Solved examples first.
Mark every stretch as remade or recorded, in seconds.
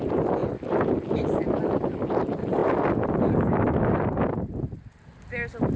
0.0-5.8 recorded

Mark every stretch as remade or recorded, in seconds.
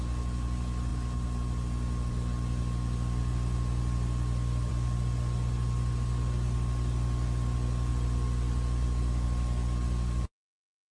0.0-10.9 recorded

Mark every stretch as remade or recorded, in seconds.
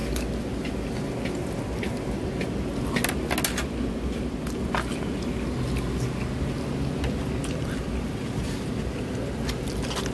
0.0-10.1 recorded